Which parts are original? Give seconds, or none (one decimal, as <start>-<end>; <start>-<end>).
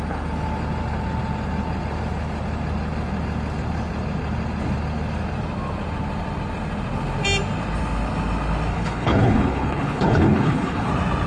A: 0.0-8.7; 10.9-11.3